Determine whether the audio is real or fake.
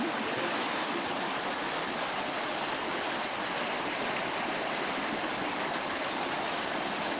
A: real